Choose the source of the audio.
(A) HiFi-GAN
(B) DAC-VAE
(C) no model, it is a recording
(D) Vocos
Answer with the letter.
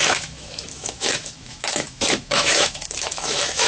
B